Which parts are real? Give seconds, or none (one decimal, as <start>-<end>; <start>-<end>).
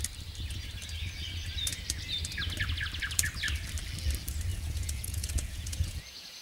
0.0-4.5